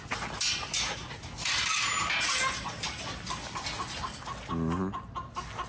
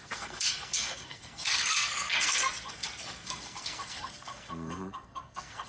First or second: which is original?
first